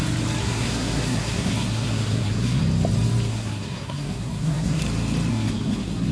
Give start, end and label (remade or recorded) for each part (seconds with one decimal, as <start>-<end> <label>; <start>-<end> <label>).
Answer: 0.0-0.4 recorded; 0.4-2.6 remade; 2.6-3.3 recorded; 3.3-4.8 remade; 4.8-5.3 recorded; 5.3-6.1 remade